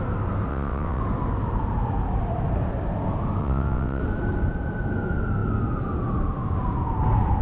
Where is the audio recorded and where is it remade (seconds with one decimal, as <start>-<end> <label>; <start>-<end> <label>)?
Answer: 0.0-0.5 recorded; 0.5-1.0 remade; 1.0-3.4 recorded; 3.4-4.0 remade; 4.0-7.4 recorded

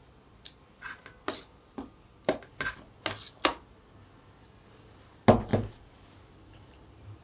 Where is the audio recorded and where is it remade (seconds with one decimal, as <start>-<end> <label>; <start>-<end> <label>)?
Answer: 0.0-7.2 recorded

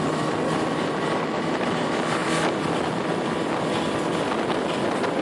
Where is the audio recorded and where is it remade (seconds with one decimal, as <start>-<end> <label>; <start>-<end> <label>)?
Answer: 0.0-5.2 recorded

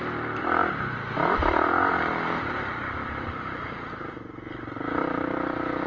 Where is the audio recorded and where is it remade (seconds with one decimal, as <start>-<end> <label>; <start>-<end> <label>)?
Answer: 0.0-5.9 recorded

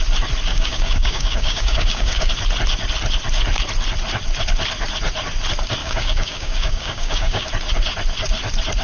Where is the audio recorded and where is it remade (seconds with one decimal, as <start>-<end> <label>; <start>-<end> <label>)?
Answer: 0.0-0.5 recorded; 0.5-2.3 remade; 2.3-5.8 recorded; 5.8-7.5 remade; 7.5-8.8 recorded

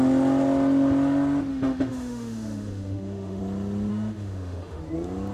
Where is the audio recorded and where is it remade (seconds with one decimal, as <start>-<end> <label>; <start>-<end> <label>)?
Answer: 0.0-1.5 recorded; 1.5-3.4 remade; 3.4-3.9 recorded; 3.9-4.8 remade; 4.8-5.3 recorded

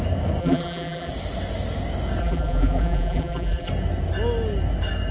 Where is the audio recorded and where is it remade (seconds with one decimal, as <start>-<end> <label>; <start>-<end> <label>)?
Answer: 0.0-0.4 recorded; 0.4-1.1 remade; 1.1-2.2 recorded; 2.2-3.7 remade; 3.7-5.1 recorded

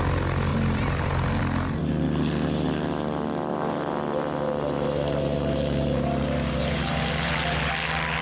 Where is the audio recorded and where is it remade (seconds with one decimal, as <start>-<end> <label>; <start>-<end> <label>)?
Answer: 0.0-0.5 recorded; 0.5-1.4 remade; 1.4-3.5 recorded; 3.5-7.7 remade; 7.7-8.2 recorded